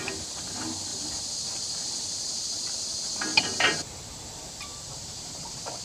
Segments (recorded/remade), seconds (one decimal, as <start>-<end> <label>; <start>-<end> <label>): 0.0-0.9 recorded; 0.9-2.6 remade; 2.6-4.7 recorded; 4.7-5.8 remade